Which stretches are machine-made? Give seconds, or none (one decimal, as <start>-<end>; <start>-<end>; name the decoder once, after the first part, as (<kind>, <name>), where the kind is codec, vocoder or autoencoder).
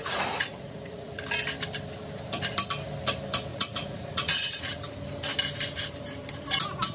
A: 0.0-1.2 (vocoder, Vocos); 3.5-4.8